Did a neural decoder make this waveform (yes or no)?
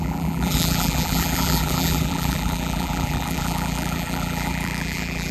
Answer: yes